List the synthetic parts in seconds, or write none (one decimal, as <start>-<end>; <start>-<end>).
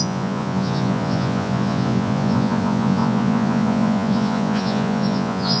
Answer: 0.0-5.6